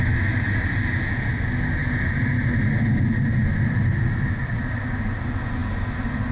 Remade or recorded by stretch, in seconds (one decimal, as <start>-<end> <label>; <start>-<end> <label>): 0.0-6.3 recorded